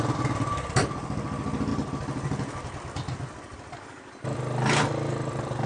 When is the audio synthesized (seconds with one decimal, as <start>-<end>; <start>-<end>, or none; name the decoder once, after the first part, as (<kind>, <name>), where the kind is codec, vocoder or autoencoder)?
none